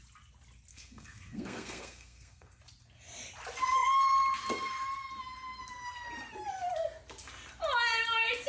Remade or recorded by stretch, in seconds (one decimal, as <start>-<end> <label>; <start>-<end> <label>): 0.0-0.7 recorded; 0.7-2.6 remade; 2.6-8.5 recorded